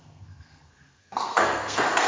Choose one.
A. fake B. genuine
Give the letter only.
A